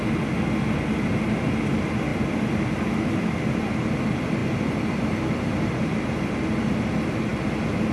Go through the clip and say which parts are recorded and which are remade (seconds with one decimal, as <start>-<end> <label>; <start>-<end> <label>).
0.0-7.9 recorded